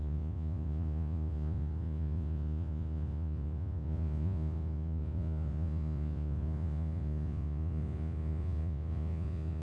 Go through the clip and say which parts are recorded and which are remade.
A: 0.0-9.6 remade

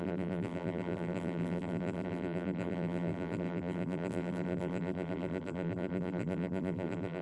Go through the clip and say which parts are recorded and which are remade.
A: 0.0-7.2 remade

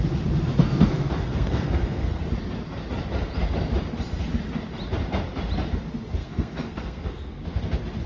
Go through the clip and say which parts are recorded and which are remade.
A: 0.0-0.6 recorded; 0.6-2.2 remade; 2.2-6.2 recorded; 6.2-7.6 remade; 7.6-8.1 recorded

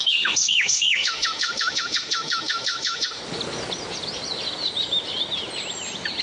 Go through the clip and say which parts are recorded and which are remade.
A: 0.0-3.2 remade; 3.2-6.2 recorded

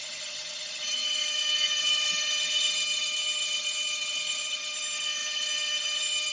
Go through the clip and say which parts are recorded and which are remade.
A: 0.0-6.3 remade

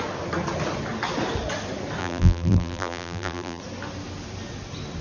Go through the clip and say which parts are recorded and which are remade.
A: 0.0-2.0 recorded; 2.0-3.6 remade; 3.6-5.0 recorded